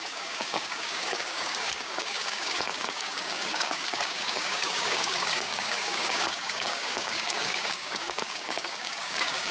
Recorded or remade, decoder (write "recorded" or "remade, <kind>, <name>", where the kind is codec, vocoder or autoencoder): remade, codec, DAC